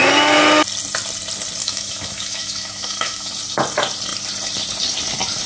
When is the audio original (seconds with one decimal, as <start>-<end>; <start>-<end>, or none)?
0.0-1.6; 3.3-5.5